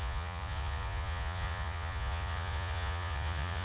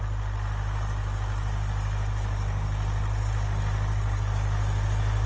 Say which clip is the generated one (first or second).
first